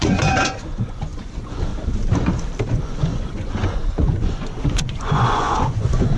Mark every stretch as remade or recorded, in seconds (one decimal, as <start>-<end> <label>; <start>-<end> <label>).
0.0-1.7 remade; 1.7-2.7 recorded; 2.7-6.2 remade